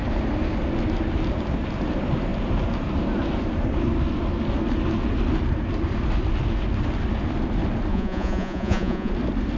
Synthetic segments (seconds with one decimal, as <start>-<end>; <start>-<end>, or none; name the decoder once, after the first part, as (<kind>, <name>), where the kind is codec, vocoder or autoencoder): 7.9-9.1 (vocoder, Vocos)